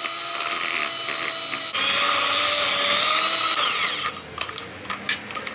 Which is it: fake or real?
real